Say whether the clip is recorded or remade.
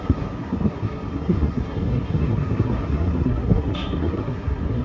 remade